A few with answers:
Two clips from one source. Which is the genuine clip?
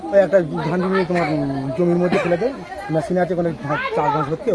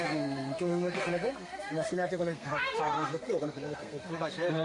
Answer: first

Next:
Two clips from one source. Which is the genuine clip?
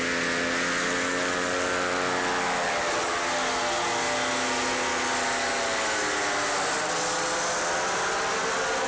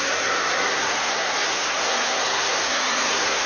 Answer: first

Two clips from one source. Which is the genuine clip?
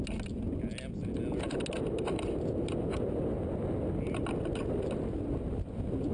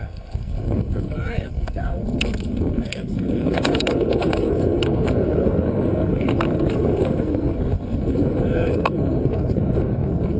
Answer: first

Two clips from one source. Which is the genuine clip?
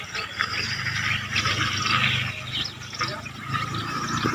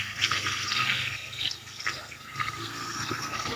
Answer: first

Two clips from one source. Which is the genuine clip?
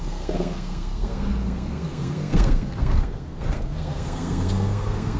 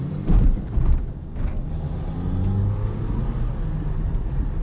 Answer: second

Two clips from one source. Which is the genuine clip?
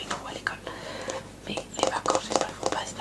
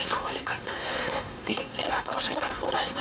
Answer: first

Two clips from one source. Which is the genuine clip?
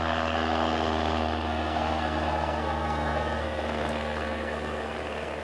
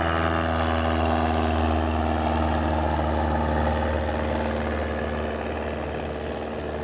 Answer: second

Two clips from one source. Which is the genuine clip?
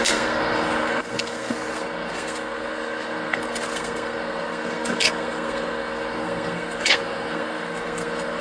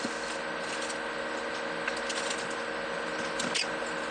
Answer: second